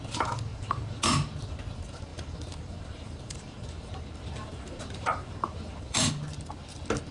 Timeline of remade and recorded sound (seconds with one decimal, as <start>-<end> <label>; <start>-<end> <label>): 0.0-0.5 recorded; 0.5-1.0 remade; 1.0-2.1 recorded; 2.1-6.1 remade; 6.1-7.1 recorded